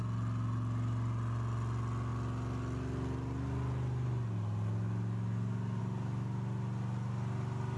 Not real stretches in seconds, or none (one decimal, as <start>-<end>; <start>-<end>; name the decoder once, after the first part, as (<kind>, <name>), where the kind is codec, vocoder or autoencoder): none